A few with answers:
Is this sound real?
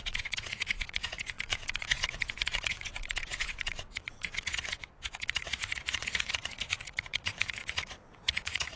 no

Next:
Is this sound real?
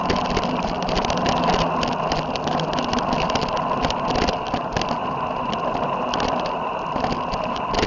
yes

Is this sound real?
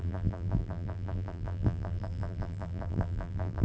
no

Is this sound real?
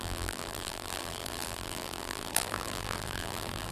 no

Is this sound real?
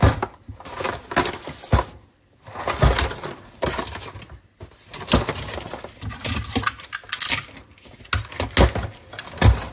yes